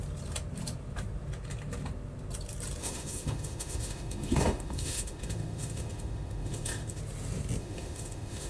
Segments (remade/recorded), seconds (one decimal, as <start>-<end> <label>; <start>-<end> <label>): 0.0-2.8 recorded; 2.8-7.0 remade; 7.0-7.6 recorded; 7.6-8.5 remade